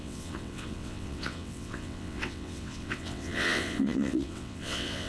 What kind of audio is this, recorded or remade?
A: remade